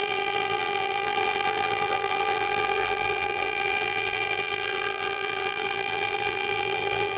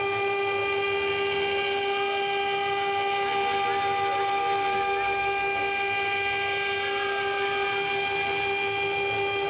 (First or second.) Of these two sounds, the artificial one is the first